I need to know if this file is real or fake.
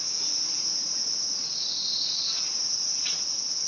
fake